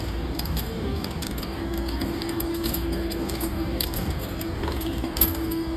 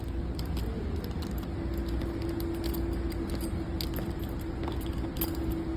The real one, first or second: second